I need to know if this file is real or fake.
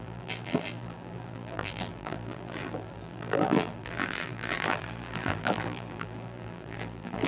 fake